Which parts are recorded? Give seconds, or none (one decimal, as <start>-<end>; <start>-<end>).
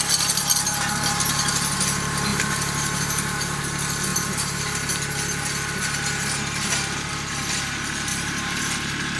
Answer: 0.0-2.3; 3.6-4.1; 4.6-8.1; 8.6-9.2